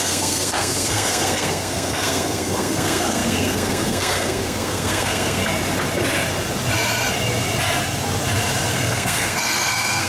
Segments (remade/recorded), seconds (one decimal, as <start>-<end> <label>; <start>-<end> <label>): 0.0-5.4 remade; 5.4-8.7 recorded; 8.7-10.1 remade